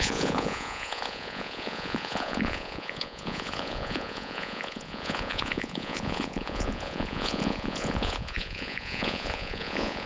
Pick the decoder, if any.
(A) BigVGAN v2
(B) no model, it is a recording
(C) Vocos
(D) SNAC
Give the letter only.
C